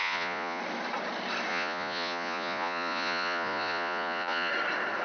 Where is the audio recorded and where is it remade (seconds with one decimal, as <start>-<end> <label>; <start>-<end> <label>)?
0.0-0.6 remade; 0.6-1.5 recorded; 1.5-4.5 remade; 4.5-5.0 recorded